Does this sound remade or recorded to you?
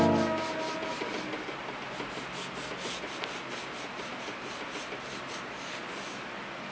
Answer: recorded